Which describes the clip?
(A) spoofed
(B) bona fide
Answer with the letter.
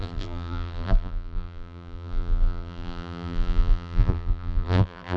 A